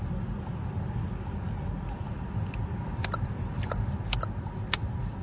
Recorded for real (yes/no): yes